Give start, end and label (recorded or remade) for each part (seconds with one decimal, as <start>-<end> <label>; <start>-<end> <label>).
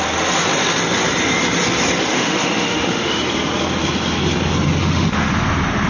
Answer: 0.0-2.1 recorded; 2.1-3.2 remade; 3.2-4.8 recorded; 4.8-5.3 remade; 5.3-5.9 recorded